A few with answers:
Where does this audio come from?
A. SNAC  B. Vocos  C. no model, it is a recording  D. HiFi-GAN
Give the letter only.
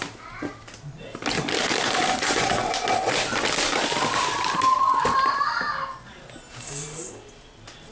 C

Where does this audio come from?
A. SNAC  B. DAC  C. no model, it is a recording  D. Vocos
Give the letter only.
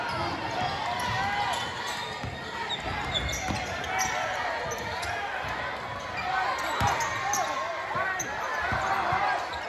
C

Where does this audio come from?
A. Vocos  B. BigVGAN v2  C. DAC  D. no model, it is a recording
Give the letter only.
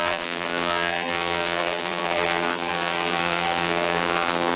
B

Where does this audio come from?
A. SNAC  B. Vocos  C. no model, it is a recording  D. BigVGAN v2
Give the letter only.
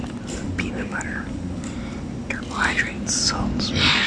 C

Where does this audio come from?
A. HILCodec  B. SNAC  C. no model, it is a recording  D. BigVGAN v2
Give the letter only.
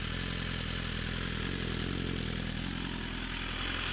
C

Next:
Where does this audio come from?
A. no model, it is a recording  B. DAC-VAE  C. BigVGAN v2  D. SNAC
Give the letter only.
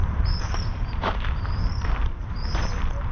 C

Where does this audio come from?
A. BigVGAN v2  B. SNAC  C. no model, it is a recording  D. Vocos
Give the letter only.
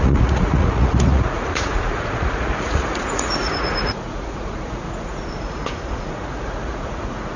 D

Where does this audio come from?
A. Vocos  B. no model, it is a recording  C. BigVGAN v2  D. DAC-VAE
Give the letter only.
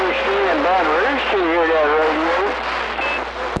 B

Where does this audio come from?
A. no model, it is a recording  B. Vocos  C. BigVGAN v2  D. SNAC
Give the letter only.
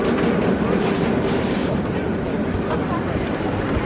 A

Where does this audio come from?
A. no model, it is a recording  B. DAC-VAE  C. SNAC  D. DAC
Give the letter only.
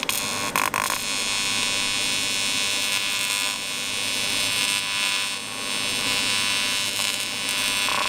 A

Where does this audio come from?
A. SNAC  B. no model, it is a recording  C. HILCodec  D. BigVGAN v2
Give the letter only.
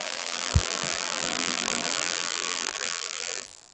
D